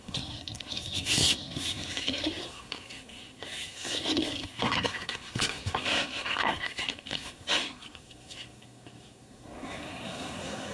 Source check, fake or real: fake